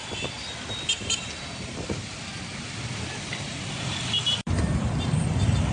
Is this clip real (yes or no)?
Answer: no